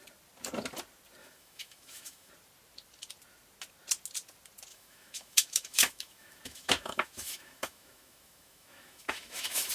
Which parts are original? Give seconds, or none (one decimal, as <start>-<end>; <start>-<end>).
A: 0.0-1.2; 2.3-4.7